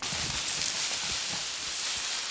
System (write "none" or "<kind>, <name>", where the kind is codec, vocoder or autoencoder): none